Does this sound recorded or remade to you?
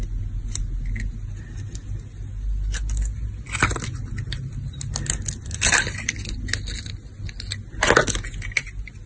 recorded